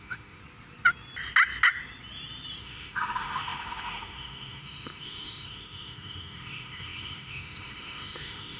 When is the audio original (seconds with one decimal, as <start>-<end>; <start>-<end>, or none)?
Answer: 0.4-2.6